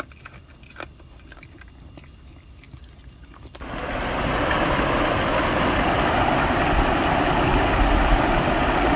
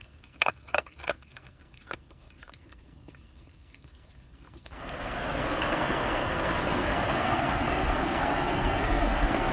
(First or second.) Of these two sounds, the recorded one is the first